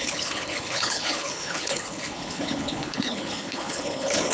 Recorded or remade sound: remade